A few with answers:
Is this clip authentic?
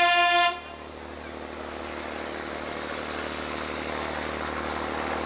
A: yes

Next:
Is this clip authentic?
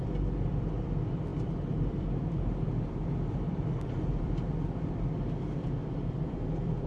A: no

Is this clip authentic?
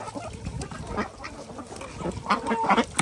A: yes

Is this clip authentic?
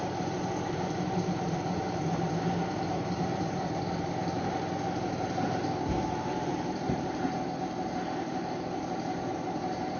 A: no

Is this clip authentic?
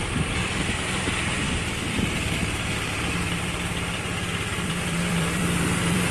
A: no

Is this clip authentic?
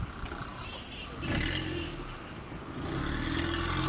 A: yes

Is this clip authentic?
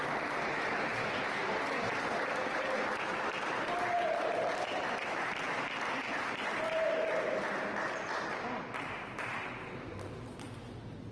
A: yes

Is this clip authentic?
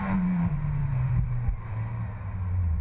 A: no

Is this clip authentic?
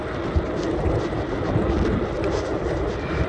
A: yes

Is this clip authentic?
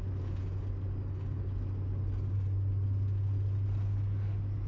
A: yes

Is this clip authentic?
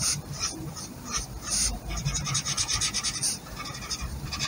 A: no